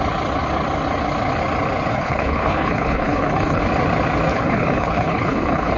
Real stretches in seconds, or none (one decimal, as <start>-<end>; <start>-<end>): 0.0-1.9; 3.6-4.3